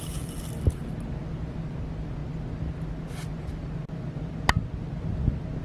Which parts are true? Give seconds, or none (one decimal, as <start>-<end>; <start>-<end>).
0.0-5.6